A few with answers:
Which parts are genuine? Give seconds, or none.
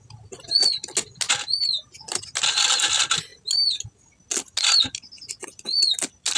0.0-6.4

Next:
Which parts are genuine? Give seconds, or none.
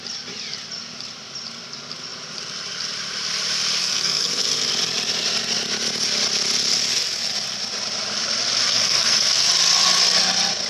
0.0-3.8; 4.4-8.7; 9.5-10.7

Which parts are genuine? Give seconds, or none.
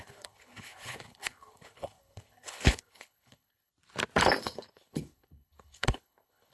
3.7-4.4